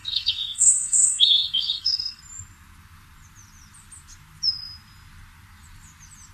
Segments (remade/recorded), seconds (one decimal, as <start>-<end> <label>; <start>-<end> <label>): 0.0-2.2 remade; 2.2-6.3 recorded